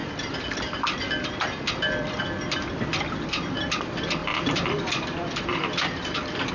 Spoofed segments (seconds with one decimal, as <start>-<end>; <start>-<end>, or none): 0.0-2.2; 4.2-6.5